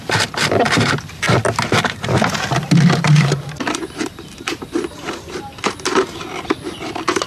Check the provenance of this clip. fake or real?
fake